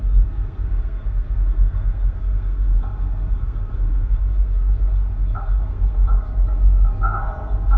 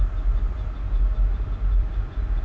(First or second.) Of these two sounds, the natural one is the second